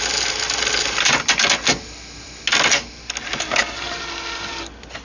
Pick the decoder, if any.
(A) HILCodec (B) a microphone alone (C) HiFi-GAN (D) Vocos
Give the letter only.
B